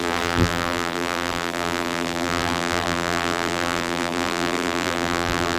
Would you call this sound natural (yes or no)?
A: no